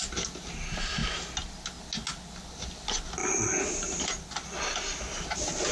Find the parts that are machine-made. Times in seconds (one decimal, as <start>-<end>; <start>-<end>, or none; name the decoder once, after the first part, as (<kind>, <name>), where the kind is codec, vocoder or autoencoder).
none